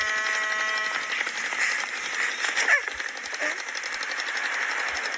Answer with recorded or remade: recorded